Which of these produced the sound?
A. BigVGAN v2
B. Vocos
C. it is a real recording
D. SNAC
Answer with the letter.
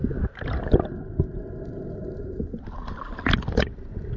C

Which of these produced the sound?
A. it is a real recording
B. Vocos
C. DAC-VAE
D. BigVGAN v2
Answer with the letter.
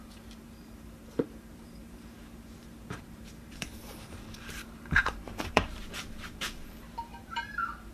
D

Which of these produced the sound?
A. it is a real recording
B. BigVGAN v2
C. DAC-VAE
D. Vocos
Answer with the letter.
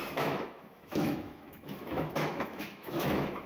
C